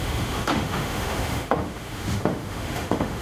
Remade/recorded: remade